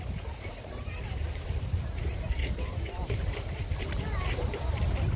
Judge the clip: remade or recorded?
remade